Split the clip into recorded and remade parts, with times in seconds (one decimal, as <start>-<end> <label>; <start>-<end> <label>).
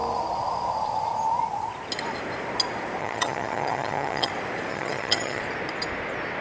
0.0-3.0 recorded; 3.0-4.3 remade; 4.3-4.7 recorded; 4.7-5.4 remade; 5.4-6.4 recorded